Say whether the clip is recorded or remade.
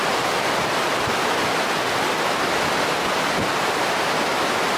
recorded